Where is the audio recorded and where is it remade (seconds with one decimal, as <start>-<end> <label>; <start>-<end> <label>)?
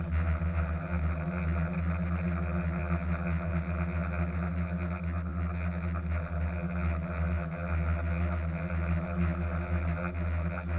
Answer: 0.0-10.8 recorded